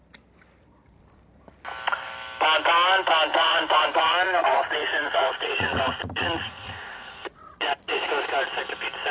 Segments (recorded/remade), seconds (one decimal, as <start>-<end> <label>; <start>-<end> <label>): 0.0-3.3 recorded; 3.3-8.1 remade; 8.1-9.1 recorded